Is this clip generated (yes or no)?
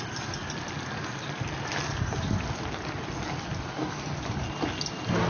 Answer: no